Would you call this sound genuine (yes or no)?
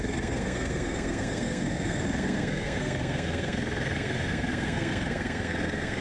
no